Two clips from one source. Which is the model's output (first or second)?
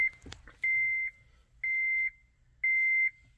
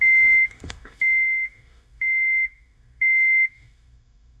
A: second